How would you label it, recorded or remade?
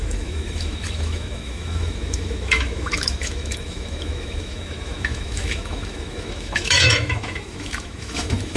remade